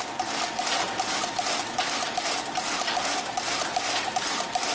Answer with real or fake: fake